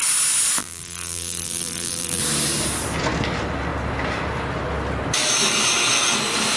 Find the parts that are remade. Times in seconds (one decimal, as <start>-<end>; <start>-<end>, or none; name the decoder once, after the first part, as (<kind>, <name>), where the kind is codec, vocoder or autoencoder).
0.6-2.2 (vocoder, BigVGAN v2)

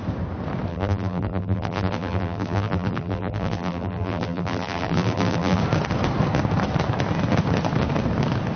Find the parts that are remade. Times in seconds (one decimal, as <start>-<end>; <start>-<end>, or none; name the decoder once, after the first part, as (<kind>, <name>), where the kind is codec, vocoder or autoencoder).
0.7-5.6 (vocoder, BigVGAN v2)